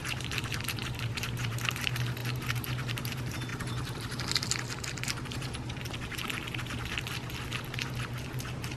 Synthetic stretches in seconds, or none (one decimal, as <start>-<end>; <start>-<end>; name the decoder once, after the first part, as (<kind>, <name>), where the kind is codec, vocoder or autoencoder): 0.0-3.5 (vocoder, BigVGAN v2)